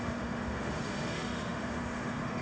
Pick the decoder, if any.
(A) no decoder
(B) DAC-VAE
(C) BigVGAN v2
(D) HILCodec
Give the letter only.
B